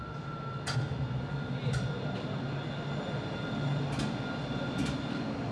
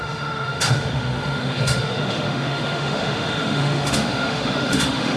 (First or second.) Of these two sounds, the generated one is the second